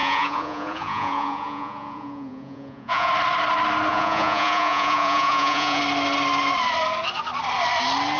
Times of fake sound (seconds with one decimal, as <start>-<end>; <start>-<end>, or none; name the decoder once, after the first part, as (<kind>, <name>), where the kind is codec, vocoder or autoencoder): 0.0-3.1 (vocoder, Vocos); 3.9-5.8